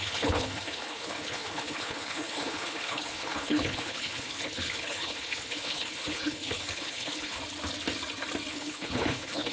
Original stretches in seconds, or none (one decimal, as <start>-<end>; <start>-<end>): 7.4-8.5